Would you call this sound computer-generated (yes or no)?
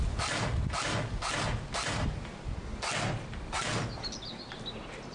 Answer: no